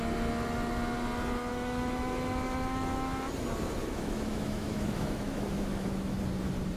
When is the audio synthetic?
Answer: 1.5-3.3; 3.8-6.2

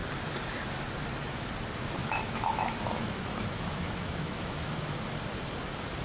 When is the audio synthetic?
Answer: 2.0-4.9

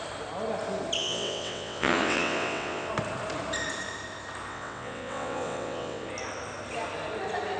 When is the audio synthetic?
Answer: 1.0-2.9; 4.5-6.1

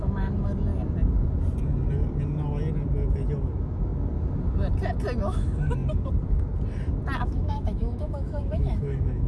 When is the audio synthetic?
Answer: 0.0-0.7; 3.4-3.9; 5.2-5.8; 7.2-9.3

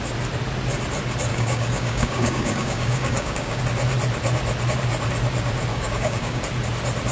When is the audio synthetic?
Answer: 1.3-3.6; 5.7-6.4